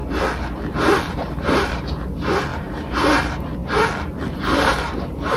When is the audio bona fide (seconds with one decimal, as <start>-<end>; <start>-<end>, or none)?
0.0-1.0; 3.6-4.2